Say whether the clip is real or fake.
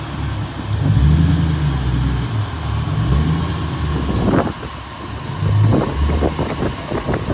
real